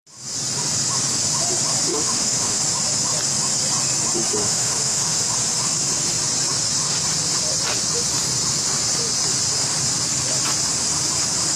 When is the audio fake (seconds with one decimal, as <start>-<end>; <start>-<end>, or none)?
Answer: 1.9-2.6; 4.4-5.2

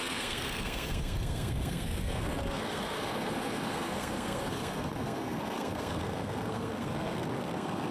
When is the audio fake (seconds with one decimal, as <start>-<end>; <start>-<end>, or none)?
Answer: 0.0-7.9

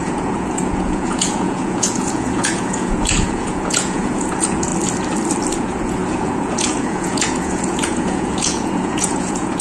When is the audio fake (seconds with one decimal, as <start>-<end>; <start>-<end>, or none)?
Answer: 0.0-4.7; 5.6-9.6

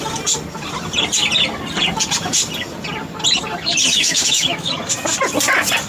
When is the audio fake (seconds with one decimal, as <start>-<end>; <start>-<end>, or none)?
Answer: 3.9-4.7

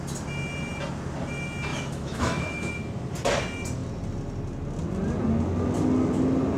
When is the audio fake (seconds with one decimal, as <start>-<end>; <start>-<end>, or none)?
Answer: 1.7-2.7

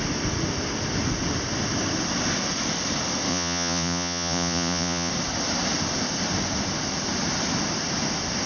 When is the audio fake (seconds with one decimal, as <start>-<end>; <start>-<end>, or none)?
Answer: 3.3-5.1

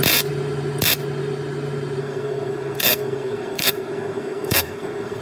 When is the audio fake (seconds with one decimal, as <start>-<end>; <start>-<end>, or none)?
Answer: 2.0-5.2